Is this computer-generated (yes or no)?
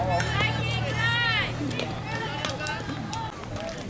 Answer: no